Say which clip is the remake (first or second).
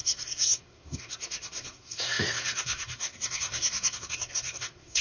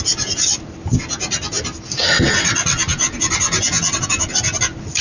first